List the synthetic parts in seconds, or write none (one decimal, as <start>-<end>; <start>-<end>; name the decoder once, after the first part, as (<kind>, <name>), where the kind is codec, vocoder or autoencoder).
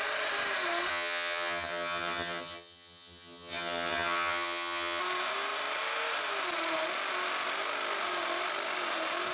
0.9-5.0 (vocoder, HiFi-GAN)